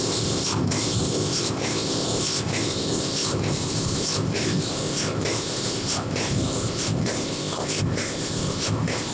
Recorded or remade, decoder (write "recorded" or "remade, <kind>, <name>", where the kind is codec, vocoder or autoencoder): remade, codec, ZipCodec